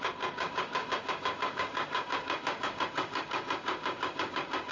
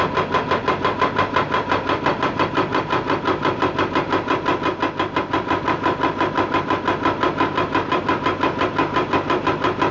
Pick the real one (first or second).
second